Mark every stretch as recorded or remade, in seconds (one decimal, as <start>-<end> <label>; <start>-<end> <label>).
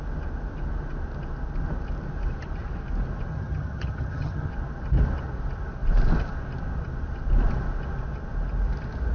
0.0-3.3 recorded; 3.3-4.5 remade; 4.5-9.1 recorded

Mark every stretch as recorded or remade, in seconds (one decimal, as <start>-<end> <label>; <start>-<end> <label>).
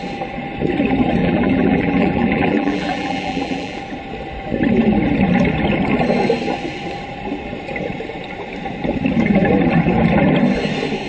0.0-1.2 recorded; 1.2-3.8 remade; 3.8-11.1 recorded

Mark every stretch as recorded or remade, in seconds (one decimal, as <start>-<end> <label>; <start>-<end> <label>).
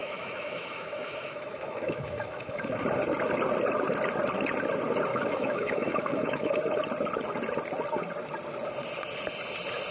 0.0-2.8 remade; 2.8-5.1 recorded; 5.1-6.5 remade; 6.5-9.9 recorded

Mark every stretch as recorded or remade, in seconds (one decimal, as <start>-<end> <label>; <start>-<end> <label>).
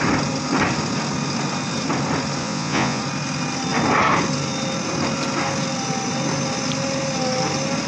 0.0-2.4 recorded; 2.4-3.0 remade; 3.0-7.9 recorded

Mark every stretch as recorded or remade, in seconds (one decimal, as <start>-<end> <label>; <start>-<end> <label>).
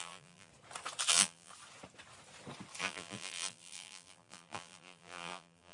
0.0-0.5 remade; 0.5-1.1 recorded; 1.1-1.5 remade; 1.5-2.8 recorded; 2.8-5.7 remade